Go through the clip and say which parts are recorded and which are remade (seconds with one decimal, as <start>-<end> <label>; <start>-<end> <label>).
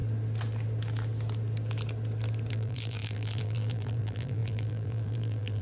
0.0-2.5 recorded; 2.5-5.6 remade